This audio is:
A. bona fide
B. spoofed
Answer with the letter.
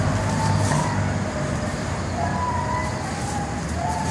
A